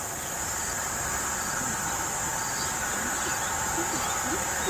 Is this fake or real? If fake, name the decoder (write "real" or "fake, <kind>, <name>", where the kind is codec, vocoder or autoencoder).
real